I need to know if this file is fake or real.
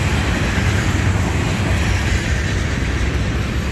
real